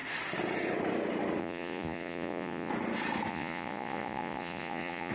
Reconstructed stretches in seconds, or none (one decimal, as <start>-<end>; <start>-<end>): 1.4-2.7; 3.3-5.1